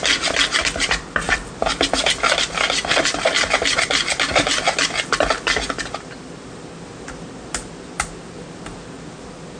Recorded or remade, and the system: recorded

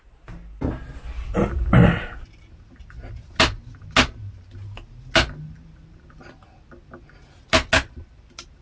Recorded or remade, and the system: recorded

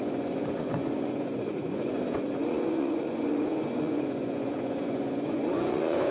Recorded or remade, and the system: remade, vocoder, Vocos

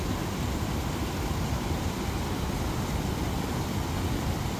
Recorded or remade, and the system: recorded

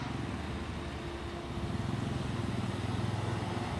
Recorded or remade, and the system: recorded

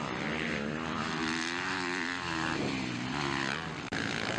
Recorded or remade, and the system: recorded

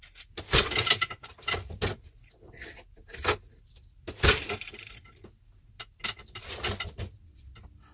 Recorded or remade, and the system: recorded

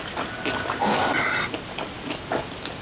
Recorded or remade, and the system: recorded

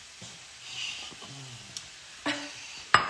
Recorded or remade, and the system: recorded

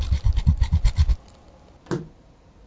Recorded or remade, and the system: recorded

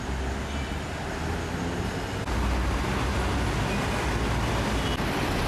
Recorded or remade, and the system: recorded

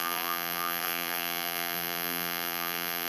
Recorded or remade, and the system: remade, vocoder, BigVGAN v2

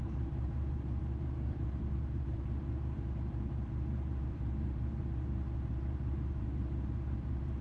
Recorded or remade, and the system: remade, vocoder, BigVGAN v2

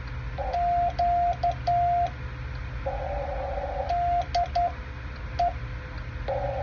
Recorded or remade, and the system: recorded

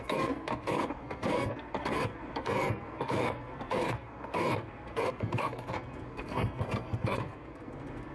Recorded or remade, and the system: remade, codec, SNAC